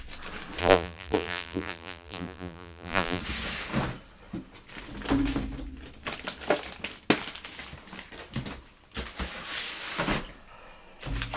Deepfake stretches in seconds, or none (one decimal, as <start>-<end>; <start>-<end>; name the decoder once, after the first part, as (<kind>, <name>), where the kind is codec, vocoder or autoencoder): 0.6-3.2 (vocoder, BigVGAN v2)